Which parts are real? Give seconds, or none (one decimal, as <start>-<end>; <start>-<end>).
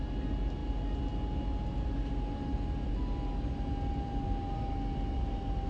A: 0.0-5.7